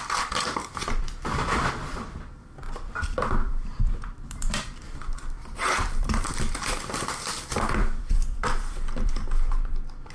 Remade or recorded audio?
remade